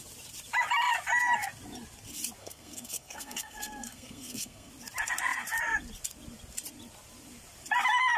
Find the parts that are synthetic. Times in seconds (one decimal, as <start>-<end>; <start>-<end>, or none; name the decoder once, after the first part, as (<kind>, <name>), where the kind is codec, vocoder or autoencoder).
2.4-4.7 (codec, SNAC)